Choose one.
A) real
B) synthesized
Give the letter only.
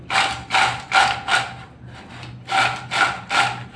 A